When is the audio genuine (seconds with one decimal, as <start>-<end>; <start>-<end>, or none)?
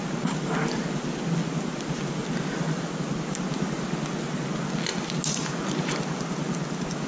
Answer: 0.0-7.1